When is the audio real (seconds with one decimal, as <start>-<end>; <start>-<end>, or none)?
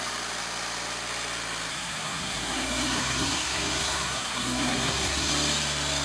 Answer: 0.0-1.7; 5.3-6.0